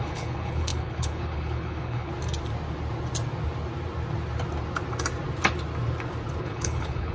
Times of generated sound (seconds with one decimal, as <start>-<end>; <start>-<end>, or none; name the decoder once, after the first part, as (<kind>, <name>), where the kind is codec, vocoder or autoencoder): 0.0-2.1 (codec, HILCodec); 6.4-7.1